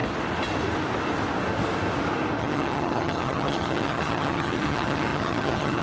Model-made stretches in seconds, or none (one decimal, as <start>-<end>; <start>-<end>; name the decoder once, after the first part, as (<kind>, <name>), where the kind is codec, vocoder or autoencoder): 2.4-5.8 (vocoder, HiFi-GAN)